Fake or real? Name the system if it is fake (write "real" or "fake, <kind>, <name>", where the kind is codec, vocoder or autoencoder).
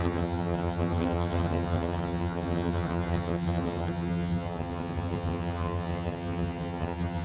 fake, vocoder, HiFi-GAN